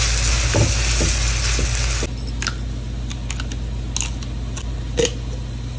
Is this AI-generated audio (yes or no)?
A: no